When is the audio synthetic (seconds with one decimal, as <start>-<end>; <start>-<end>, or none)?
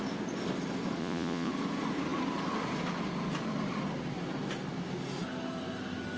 1.0-1.5